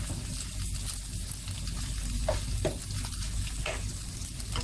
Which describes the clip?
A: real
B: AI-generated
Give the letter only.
A